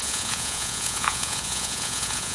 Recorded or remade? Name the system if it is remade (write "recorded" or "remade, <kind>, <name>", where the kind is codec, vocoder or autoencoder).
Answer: remade, vocoder, Vocos